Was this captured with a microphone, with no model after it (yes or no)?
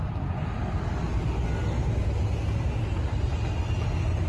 yes